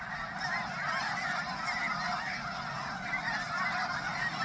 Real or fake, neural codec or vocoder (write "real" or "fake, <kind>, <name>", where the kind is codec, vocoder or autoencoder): real